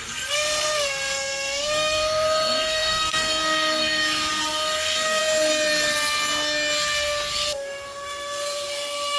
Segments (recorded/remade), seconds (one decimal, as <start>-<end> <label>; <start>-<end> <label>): 0.0-5.2 remade; 5.2-7.3 recorded; 7.3-9.2 remade